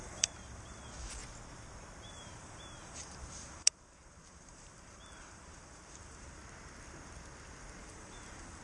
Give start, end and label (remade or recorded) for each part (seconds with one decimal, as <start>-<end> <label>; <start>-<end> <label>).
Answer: 0.0-1.2 remade; 1.2-2.1 recorded; 2.1-6.4 remade; 6.4-7.8 recorded; 7.8-8.6 remade